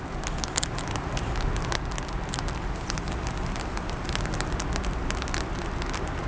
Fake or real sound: real